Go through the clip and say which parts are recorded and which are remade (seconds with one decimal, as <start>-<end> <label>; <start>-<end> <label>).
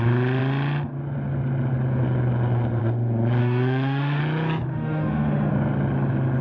0.0-3.4 recorded; 3.4-4.2 remade; 4.2-4.7 recorded; 4.7-5.5 remade; 5.5-6.4 recorded